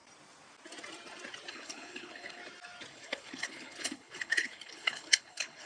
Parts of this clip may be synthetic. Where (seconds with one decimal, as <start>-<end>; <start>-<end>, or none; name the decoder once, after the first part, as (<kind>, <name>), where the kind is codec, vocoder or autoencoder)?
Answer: 1.5-2.4 (codec, HILCodec); 2.9-5.7